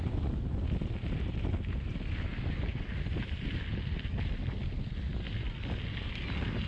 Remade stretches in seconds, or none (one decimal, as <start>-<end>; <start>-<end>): none